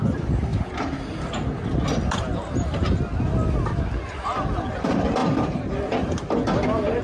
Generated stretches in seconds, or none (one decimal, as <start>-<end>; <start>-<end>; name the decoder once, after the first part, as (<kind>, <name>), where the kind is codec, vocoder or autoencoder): 5.2-5.7 (vocoder, BigVGAN v2)